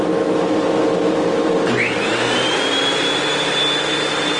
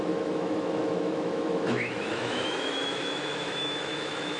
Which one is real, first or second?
first